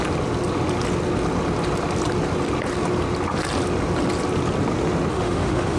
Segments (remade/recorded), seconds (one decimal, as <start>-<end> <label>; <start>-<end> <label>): 0.0-5.1 recorded; 5.1-5.8 remade